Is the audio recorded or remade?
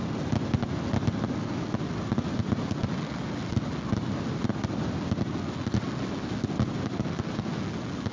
recorded